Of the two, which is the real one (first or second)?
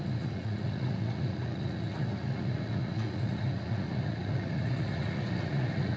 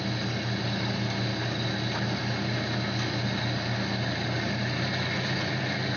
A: second